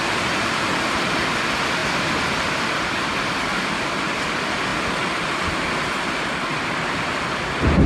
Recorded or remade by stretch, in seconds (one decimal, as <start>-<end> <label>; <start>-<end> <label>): 0.0-4.7 recorded; 4.7-5.5 remade; 5.5-6.5 recorded; 6.5-7.9 remade